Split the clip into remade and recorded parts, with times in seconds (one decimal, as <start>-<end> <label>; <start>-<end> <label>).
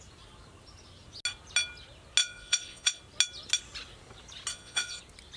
0.0-2.2 recorded; 2.2-3.0 remade; 3.0-4.5 recorded; 4.5-5.0 remade; 5.0-5.4 recorded